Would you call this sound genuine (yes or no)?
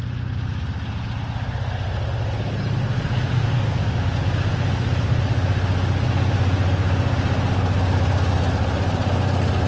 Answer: yes